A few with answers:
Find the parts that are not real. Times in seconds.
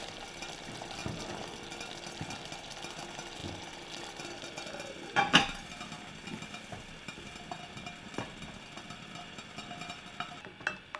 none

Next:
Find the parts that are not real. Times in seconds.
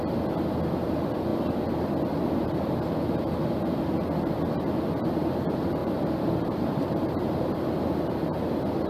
5.8-7.5 (vocoder, BigVGAN v2)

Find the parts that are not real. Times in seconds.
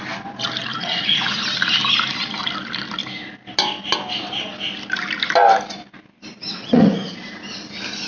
0.7-1.4 (vocoder, Vocos); 6.3-7.1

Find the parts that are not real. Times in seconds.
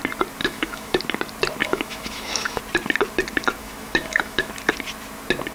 0.4-1.0 (autoencoder, DAC-VAE); 1.6-2.6; 3.6-4.5